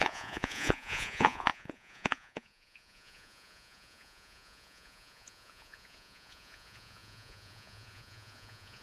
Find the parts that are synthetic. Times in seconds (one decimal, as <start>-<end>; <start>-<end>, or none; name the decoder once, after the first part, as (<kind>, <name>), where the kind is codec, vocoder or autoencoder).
0.0-8.8 (vocoder, Vocos)